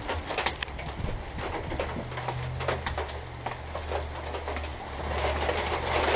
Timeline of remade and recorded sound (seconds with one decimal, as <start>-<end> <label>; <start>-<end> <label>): 0.0-4.7 recorded; 4.7-5.7 remade; 5.7-6.2 recorded